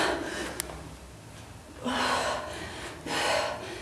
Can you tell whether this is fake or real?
real